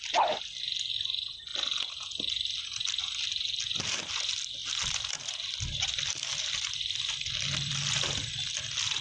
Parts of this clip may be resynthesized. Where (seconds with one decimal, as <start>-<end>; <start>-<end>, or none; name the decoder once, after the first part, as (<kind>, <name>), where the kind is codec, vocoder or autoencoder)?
4.6-8.5 (vocoder, BigVGAN v2)